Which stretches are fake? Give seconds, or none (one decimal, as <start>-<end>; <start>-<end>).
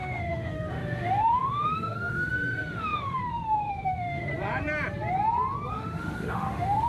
0.0-4.3; 5.7-6.9